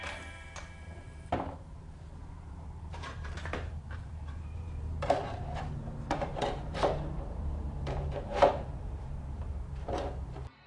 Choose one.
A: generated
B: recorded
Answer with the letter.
A